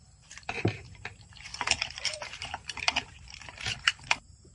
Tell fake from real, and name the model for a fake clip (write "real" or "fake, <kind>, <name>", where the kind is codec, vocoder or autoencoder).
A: fake, vocoder, BigVGAN v2